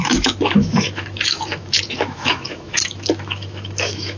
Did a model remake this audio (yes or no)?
yes